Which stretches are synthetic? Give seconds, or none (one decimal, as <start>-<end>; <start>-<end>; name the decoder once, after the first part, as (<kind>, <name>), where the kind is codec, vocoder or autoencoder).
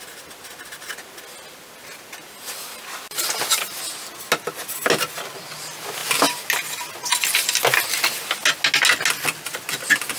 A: none